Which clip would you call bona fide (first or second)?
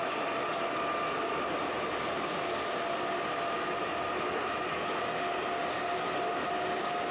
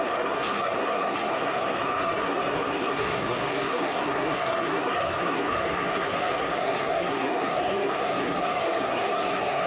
first